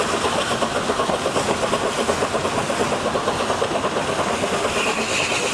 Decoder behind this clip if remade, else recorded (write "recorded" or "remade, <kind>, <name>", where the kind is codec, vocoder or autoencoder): recorded